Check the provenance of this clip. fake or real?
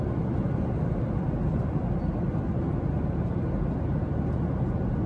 real